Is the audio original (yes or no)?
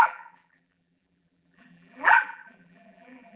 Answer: no